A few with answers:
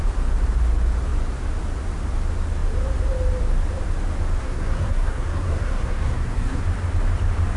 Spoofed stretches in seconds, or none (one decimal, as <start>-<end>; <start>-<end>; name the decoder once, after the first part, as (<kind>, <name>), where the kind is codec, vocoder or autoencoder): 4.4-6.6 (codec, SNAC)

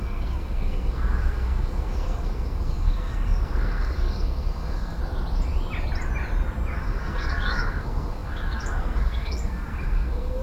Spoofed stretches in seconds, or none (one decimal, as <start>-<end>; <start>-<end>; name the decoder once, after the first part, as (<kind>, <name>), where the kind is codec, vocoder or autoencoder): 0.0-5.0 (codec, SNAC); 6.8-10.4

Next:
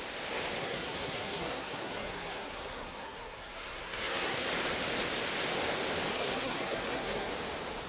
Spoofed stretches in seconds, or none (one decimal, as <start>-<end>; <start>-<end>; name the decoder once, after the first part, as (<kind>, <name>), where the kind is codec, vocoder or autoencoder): 0.6-4.5 (codec, SNAC); 6.1-7.3